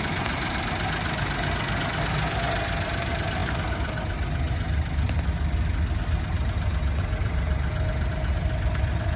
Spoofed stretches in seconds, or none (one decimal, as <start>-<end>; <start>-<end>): none